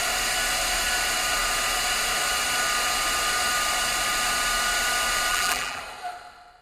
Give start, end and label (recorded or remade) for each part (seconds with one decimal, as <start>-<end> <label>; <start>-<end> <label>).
0.0-5.3 recorded; 5.3-5.8 remade; 5.8-6.6 recorded